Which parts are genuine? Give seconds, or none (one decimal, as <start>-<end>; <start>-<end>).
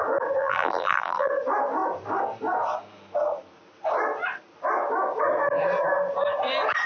0.0-0.4; 1.3-6.9